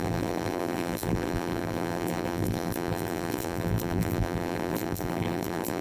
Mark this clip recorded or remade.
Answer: remade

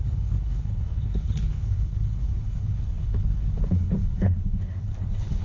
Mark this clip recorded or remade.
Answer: remade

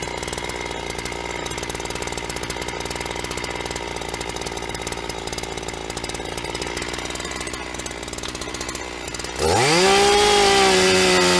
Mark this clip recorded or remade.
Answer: recorded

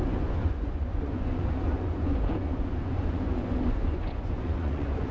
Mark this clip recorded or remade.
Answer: remade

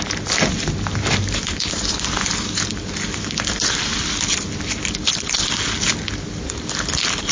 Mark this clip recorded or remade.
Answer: recorded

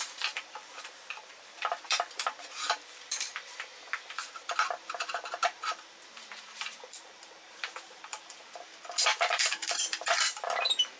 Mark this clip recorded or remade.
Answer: remade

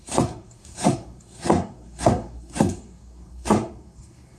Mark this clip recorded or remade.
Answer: remade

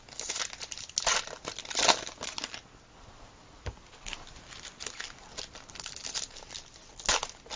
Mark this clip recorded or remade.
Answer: recorded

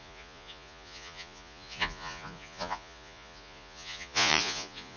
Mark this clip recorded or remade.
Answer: remade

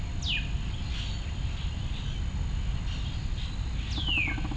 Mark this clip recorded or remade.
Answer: recorded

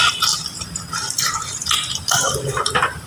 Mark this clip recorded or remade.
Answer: remade